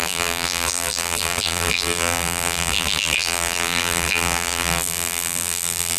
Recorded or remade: remade